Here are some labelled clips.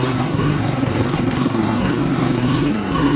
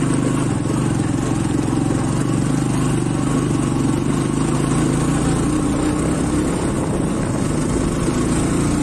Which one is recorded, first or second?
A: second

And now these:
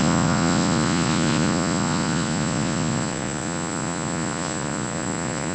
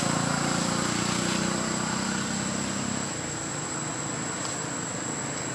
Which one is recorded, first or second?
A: second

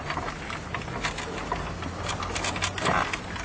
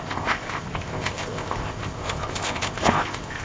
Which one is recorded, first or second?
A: first